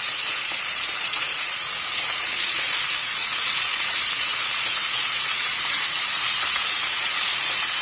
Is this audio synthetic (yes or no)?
yes